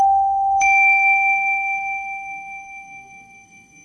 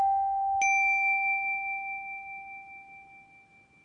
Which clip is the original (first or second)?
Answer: second